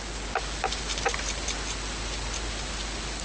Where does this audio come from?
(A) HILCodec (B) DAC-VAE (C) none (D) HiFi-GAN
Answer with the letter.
C